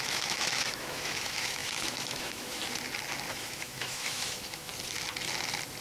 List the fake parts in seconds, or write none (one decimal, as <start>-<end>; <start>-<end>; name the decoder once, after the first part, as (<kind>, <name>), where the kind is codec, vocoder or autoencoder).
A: 0.0-2.6 (autoencoder, DAC-VAE); 3.3-4.7